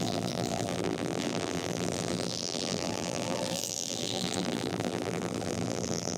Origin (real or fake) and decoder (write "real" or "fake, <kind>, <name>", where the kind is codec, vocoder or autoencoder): fake, vocoder, BigVGAN v2